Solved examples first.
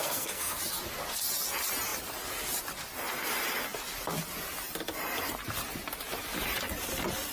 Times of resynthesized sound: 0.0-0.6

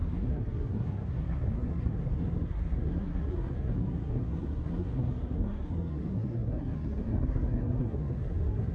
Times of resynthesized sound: 0.0-8.7

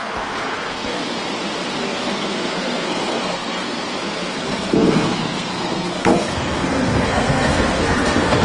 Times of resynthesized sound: 0.0-1.0; 1.8-8.4

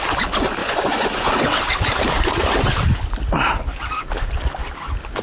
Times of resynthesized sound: 0.6-1.3

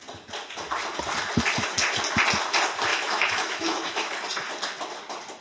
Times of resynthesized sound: 2.9-4.1

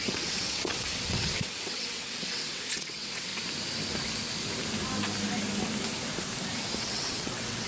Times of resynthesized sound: 0.0-3.3; 6.8-7.7